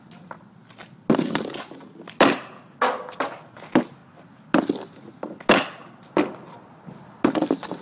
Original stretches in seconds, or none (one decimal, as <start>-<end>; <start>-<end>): 0.0-7.8